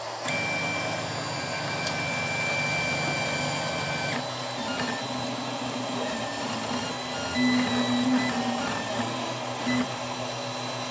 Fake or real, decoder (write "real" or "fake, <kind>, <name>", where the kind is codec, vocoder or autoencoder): real